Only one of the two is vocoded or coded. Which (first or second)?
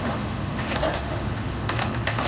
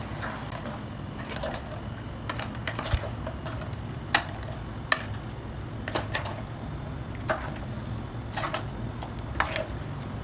first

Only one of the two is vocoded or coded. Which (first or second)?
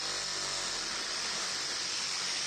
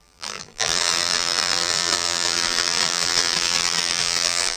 second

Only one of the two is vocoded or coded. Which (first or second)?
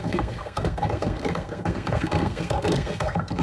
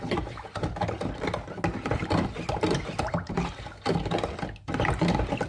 first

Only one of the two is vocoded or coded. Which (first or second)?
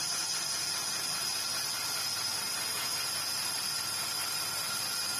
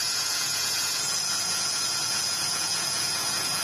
second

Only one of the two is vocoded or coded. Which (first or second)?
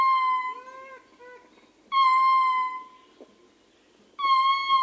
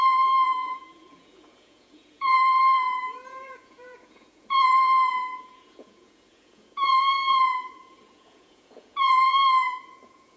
second